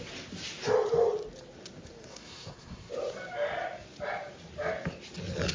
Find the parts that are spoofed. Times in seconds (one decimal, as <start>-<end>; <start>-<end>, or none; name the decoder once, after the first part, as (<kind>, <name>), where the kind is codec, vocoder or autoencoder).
2.1-2.9 (codec, SNAC)